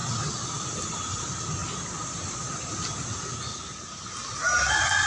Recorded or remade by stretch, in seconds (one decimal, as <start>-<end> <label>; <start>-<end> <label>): 0.0-5.1 recorded